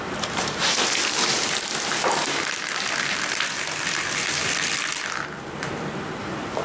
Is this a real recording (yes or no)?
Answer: yes